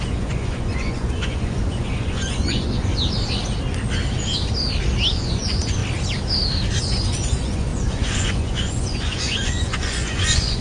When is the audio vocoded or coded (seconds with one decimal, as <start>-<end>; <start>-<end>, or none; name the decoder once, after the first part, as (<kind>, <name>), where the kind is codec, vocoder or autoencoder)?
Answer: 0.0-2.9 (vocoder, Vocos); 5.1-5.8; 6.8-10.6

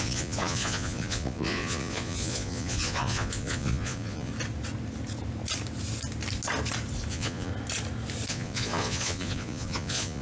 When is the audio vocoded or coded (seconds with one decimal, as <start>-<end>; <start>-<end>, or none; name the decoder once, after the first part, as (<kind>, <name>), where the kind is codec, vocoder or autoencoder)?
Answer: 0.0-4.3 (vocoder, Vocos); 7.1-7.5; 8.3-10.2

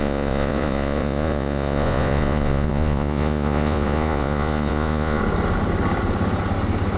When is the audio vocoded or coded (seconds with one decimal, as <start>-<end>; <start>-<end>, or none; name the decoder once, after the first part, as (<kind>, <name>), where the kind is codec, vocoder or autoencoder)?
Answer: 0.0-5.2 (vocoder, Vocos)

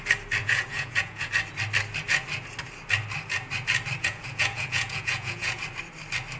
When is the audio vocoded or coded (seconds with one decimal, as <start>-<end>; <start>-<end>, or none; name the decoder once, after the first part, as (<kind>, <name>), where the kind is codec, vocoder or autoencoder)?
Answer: 0.4-1.3 (vocoder, Vocos); 4.0-5.6

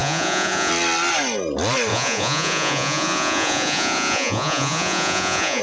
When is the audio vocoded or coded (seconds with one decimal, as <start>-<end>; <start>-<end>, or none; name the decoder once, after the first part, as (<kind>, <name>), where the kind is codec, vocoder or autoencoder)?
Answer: 0.0-0.7 (vocoder, Vocos); 1.9-5.6

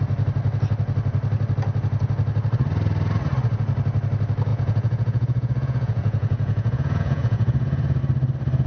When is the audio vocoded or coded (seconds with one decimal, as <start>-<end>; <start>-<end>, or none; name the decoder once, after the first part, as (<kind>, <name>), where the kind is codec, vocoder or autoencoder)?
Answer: 4.5-8.0 (vocoder, Vocos)

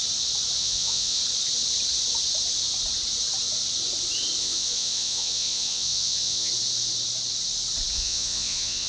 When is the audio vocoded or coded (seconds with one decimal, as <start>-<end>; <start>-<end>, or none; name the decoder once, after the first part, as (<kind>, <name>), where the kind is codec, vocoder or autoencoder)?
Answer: 0.6-1.2 (vocoder, Vocos); 4.4-6.5; 7.9-8.9

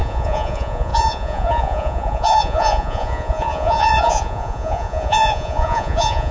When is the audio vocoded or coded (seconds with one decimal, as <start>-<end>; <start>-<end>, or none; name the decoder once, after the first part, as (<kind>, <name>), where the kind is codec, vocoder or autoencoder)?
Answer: 0.0-6.3 (vocoder, Vocos)